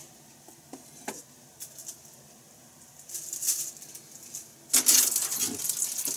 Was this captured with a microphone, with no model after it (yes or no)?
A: yes